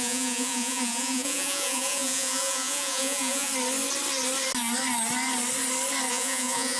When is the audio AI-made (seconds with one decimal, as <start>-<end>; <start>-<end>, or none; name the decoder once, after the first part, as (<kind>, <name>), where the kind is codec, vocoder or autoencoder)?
0.0-3.5 (vocoder, Vocos); 6.1-6.8